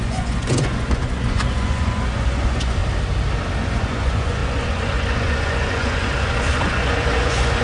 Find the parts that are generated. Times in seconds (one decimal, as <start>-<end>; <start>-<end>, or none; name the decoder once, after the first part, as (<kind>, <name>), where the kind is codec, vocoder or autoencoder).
0.0-2.8 (vocoder, Vocos); 3.7-7.6